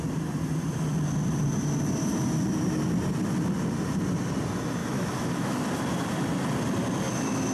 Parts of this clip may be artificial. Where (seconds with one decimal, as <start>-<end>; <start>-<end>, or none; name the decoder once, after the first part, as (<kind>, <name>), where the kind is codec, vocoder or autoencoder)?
4.8-5.6 (autoencoder, DAC-VAE)